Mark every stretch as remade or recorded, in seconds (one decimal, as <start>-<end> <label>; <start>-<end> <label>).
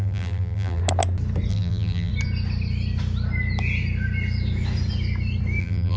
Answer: 0.0-0.8 remade; 0.8-1.5 recorded; 1.5-2.1 remade; 2.1-5.6 recorded; 5.6-6.0 remade